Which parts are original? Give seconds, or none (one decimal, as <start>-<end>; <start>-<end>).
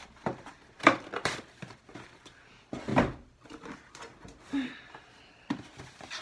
2.9-4.4